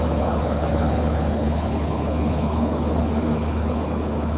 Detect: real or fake fake